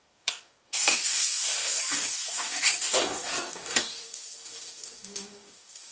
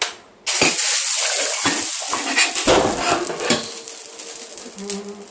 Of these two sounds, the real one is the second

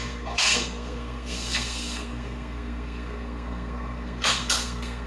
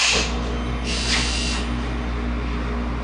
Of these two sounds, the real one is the second